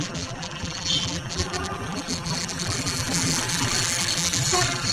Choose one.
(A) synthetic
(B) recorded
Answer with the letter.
A